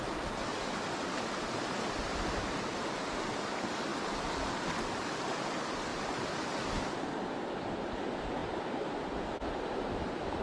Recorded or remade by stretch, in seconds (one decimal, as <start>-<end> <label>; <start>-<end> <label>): 0.0-5.9 recorded; 5.9-6.5 remade; 6.5-10.4 recorded